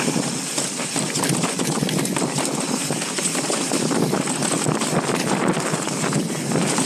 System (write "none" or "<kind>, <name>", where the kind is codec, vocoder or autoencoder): none